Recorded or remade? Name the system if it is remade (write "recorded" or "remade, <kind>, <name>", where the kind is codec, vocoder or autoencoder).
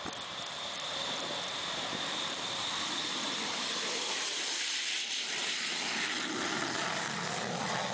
remade, vocoder, BigVGAN v2